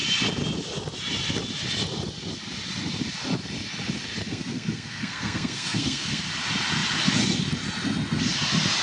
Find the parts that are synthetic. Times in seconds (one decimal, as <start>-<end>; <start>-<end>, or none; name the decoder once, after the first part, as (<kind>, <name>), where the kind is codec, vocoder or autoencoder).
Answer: 4.3-6.2 (codec, SNAC)